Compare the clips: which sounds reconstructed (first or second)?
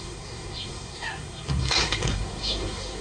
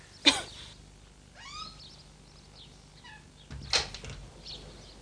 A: first